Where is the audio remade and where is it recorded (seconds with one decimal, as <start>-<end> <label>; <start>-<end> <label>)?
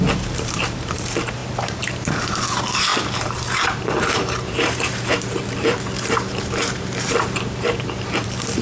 0.0-8.6 remade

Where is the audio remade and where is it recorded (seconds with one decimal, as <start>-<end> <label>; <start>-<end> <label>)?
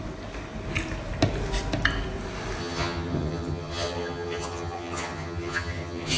0.0-2.6 recorded; 2.6-6.2 remade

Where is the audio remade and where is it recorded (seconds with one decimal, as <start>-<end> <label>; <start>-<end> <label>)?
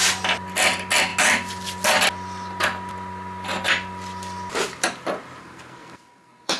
0.0-5.4 recorded; 5.4-6.6 remade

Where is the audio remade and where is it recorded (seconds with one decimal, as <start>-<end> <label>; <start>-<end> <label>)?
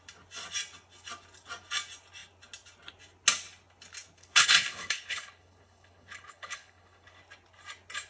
0.0-4.2 recorded; 4.2-7.2 remade; 7.2-8.1 recorded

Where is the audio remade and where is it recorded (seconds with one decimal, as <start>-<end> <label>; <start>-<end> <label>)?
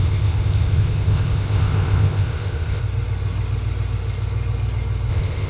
0.0-2.8 remade; 2.8-5.1 recorded; 5.1-5.5 remade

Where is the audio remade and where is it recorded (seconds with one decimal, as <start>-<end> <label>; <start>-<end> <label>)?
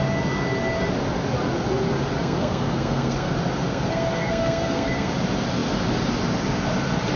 0.0-2.2 recorded; 2.2-3.3 remade; 3.3-3.7 recorded; 3.7-5.1 remade; 5.1-7.2 recorded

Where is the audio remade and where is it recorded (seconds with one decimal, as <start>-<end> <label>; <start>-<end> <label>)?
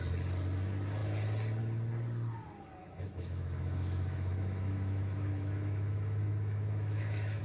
0.0-2.8 recorded; 2.8-7.4 remade